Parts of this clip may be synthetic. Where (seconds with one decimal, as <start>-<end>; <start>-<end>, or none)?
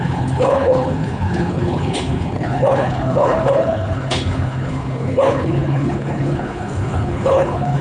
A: 0.0-7.8